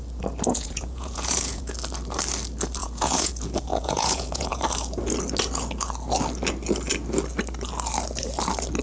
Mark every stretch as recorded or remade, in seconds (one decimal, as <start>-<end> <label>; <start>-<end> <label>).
0.0-0.5 recorded; 0.5-1.7 remade; 1.7-2.8 recorded; 2.8-3.3 remade; 3.3-3.7 recorded; 3.7-4.6 remade; 4.6-8.8 recorded

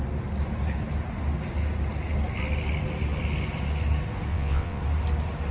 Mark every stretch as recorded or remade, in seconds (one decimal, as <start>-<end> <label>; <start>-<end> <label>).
0.0-4.3 recorded; 4.3-4.8 remade; 4.8-5.5 recorded

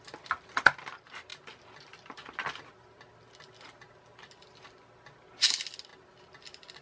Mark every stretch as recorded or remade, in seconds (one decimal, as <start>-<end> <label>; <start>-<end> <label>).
0.0-6.8 recorded

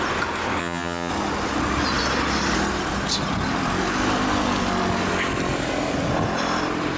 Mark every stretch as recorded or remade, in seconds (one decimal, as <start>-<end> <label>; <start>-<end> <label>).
0.0-0.6 recorded; 0.6-1.1 remade; 1.1-7.0 recorded

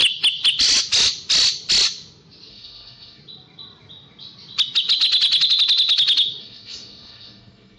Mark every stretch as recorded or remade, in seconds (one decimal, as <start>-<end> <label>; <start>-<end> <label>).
0.0-2.5 recorded; 2.5-3.2 remade; 3.2-6.4 recorded; 6.4-7.8 remade

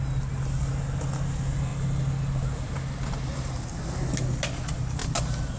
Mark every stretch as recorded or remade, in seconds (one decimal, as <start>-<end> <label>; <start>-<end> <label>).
0.0-5.6 recorded

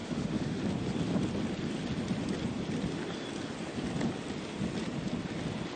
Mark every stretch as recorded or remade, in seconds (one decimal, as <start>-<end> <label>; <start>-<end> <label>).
0.0-0.6 remade; 0.6-5.8 recorded